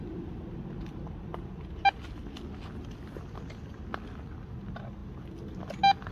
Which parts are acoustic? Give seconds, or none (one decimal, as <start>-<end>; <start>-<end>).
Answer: 0.0-6.1